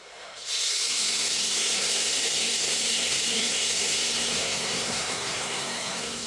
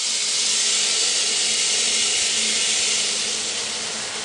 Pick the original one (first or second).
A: second